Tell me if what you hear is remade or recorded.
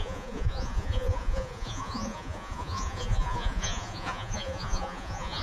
remade